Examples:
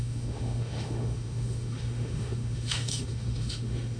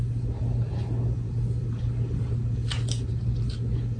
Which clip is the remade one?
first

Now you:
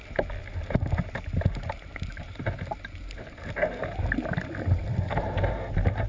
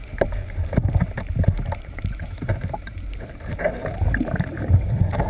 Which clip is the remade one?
second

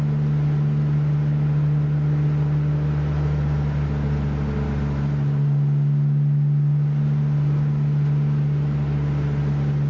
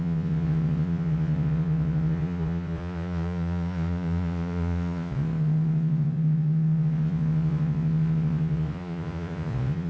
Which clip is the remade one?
second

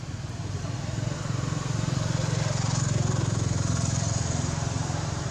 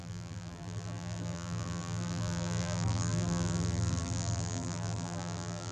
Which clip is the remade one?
second